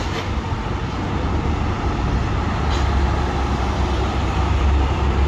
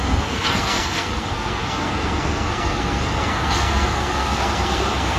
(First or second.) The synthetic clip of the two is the second